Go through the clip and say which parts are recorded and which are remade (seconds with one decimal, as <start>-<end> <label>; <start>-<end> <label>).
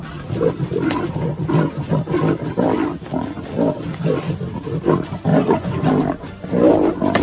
0.0-5.3 recorded; 5.3-5.9 remade; 5.9-7.2 recorded